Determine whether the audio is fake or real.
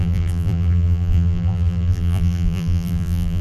fake